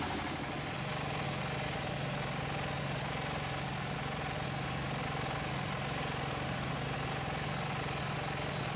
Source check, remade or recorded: recorded